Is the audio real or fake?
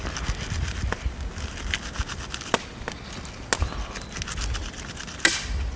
real